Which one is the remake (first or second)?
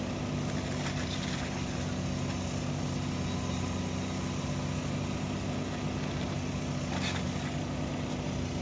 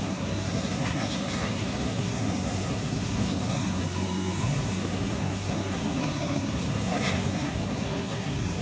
second